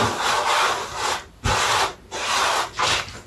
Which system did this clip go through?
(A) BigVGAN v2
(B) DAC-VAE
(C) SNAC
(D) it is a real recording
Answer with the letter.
D